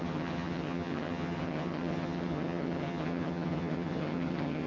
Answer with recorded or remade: remade